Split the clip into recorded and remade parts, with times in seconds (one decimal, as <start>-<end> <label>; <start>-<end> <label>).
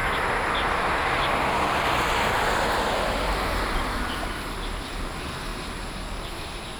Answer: 0.0-6.8 recorded